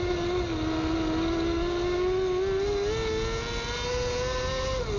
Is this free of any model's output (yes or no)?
yes